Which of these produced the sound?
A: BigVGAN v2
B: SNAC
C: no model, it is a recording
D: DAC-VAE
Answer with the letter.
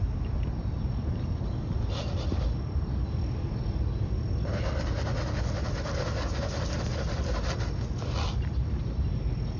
C